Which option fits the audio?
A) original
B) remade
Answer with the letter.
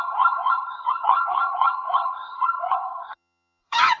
B